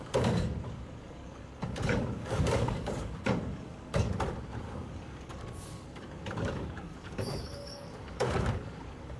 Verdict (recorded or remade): remade